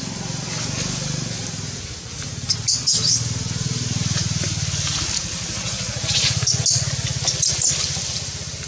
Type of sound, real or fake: real